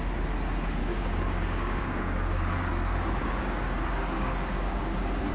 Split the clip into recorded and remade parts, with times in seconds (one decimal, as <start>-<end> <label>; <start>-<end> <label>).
0.0-0.8 recorded; 0.8-2.7 remade; 2.7-3.2 recorded; 3.2-5.3 remade